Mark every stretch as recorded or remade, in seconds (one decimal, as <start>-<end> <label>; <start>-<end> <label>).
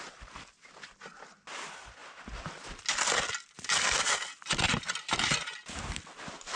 0.0-6.6 recorded